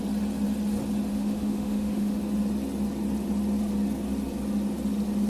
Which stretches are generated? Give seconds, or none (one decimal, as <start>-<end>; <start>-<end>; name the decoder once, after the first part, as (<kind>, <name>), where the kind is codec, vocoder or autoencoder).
1.1-2.2 (autoencoder, DAC-VAE)